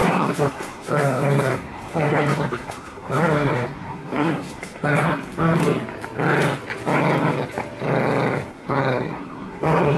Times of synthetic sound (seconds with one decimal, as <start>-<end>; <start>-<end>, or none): 0.0-5.6; 8.5-10.0